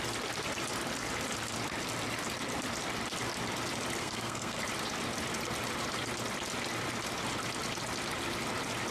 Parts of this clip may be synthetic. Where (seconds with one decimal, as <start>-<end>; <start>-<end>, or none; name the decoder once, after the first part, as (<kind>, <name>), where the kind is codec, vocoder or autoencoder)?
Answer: 4.0-4.6 (codec, SNAC)